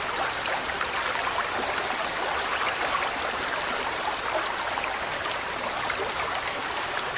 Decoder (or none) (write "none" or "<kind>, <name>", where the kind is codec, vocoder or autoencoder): none